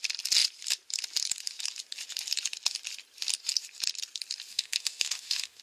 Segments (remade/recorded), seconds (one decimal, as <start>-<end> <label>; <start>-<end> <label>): 0.0-4.5 recorded; 4.5-5.6 remade

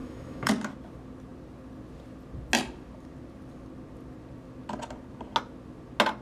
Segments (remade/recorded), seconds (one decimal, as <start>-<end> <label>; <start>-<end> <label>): 0.0-0.5 remade; 0.5-6.2 recorded